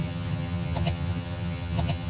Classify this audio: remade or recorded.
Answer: remade